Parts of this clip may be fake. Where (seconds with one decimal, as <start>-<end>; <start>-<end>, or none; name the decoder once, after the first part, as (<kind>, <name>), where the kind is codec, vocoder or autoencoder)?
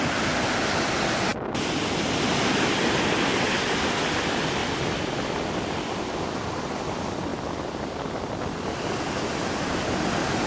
none